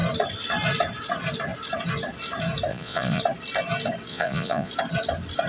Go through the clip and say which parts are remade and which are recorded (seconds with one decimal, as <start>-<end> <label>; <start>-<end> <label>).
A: 0.0-2.7 recorded; 2.7-3.2 remade; 3.2-4.1 recorded; 4.1-4.7 remade; 4.7-5.5 recorded